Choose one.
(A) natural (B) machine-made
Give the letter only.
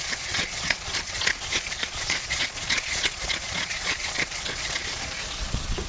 B